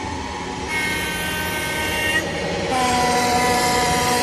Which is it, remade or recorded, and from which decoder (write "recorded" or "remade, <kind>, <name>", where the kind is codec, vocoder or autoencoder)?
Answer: recorded